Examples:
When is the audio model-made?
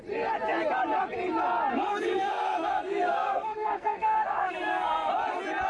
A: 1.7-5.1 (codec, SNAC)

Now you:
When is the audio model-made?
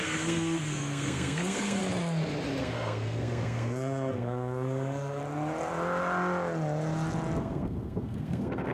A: 0.0-1.8 (codec, SNAC); 2.6-5.2; 7.4-8.7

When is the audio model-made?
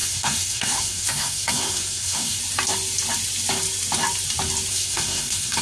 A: 0.0-2.4 (codec, SNAC); 4.7-5.6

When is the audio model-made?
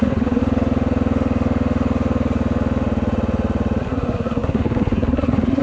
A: 0.0-0.4 (codec, SNAC); 3.8-5.6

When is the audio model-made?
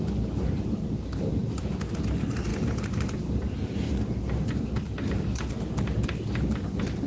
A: none